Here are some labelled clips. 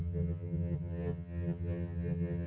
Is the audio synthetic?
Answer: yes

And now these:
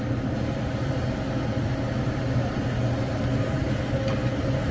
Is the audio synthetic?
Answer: no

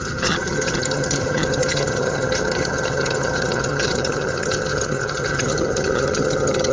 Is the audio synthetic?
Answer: yes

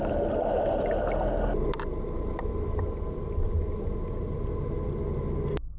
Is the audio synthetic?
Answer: no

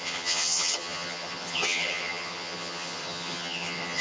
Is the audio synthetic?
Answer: yes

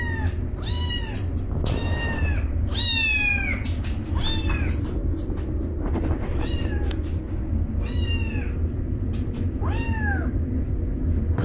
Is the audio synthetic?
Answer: no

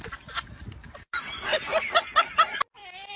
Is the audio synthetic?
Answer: no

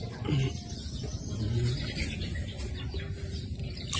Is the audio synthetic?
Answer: no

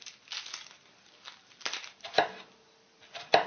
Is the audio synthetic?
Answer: no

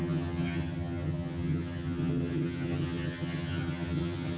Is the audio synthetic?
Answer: yes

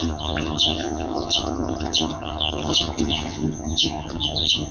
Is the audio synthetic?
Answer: yes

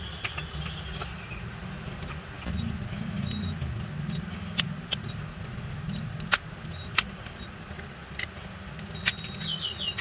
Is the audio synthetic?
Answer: no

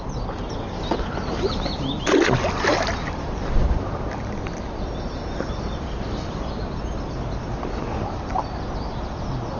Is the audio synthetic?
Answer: no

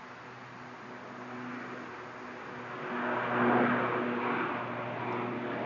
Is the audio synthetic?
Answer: no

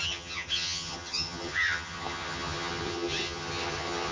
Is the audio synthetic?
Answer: yes